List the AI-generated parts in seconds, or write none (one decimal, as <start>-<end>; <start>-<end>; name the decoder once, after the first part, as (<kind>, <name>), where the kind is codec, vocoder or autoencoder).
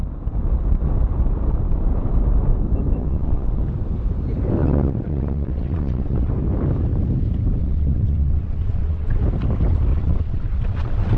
3.0-3.6 (vocoder, WaveNeXt); 4.6-6.3; 7.6-9.2; 9.9-11.2